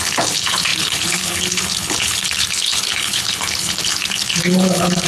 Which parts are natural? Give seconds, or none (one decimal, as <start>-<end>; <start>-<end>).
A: none